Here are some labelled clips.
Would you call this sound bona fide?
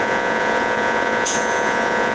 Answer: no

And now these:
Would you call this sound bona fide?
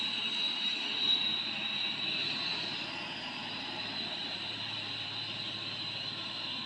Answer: no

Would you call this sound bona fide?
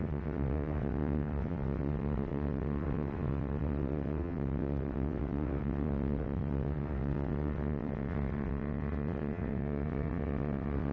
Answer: no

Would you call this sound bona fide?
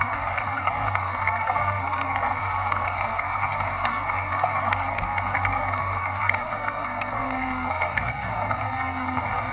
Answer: no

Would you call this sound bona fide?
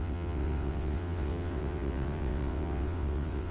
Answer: no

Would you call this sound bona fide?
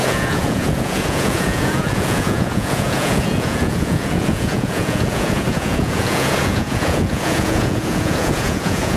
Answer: no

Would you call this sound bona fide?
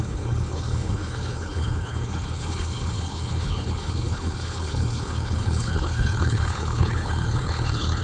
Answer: no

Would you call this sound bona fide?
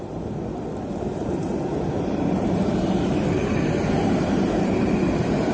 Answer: no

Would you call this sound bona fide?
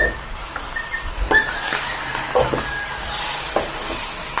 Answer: yes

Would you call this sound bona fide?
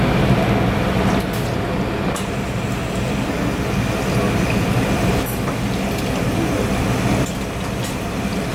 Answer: yes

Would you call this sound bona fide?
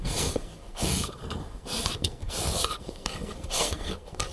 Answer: no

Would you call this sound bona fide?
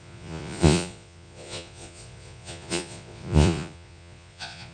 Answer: no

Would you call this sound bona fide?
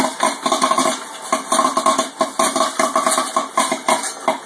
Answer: yes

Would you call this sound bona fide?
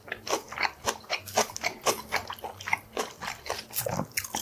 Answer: yes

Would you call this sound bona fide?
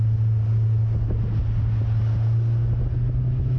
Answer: yes